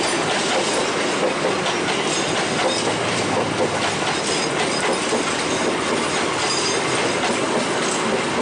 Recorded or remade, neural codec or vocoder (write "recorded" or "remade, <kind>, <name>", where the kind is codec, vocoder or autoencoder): recorded